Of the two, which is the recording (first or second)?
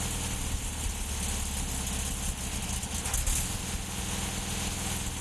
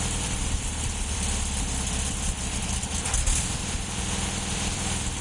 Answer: first